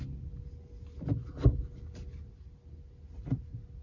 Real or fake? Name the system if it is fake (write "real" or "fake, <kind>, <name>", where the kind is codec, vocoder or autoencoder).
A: real